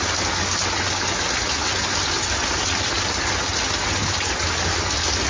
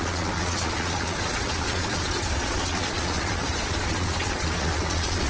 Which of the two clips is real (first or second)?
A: first